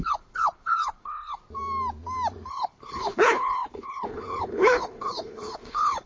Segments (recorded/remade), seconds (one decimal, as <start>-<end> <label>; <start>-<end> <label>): 0.0-1.4 remade; 1.4-2.5 recorded; 2.5-6.1 remade